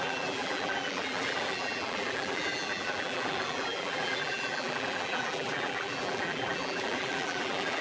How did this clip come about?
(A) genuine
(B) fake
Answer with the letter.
B